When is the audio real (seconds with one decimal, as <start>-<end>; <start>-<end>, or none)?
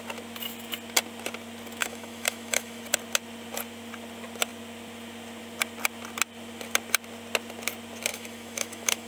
0.0-1.8; 2.8-8.1